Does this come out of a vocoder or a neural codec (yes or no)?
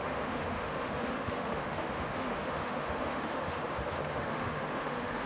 yes